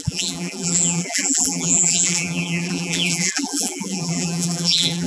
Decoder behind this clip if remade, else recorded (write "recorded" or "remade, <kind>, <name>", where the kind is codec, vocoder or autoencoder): remade, vocoder, BigVGAN v2